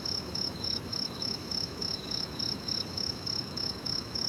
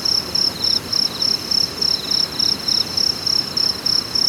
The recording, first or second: second